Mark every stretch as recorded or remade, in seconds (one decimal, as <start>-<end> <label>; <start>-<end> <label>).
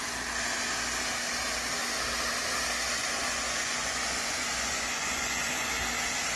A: 0.0-3.0 recorded; 3.0-5.7 remade; 5.7-6.4 recorded